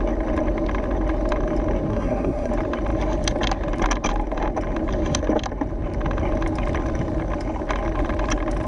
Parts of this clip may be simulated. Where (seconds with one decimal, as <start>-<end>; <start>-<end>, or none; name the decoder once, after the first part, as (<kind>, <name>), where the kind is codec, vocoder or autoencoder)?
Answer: 1.9-2.5 (codec, SNAC)